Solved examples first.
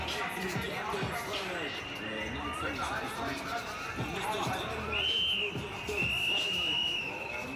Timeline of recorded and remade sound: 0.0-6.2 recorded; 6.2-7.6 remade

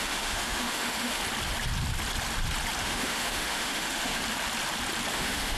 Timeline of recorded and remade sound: 0.0-1.2 remade; 1.2-2.8 recorded; 2.8-4.2 remade; 4.2-5.1 recorded; 5.1-5.6 remade

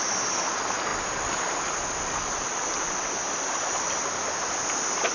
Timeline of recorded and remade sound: 0.0-5.1 recorded